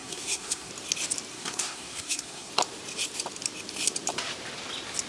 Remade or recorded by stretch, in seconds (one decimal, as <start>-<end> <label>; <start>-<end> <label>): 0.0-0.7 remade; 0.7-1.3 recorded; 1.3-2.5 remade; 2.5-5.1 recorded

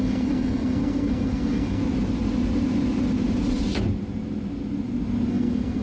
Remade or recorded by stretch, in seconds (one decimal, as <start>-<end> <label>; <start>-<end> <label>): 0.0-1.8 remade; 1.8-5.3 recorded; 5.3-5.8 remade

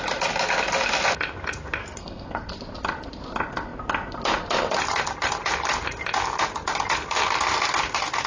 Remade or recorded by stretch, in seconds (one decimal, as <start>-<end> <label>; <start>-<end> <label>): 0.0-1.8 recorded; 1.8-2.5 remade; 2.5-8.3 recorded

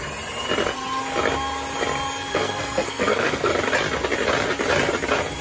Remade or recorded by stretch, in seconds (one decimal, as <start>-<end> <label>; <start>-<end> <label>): 0.0-2.3 recorded; 2.3-3.5 remade; 3.5-5.4 recorded